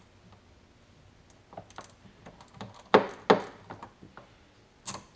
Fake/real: real